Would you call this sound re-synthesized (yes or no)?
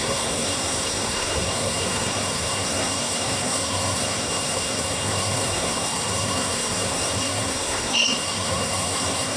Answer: yes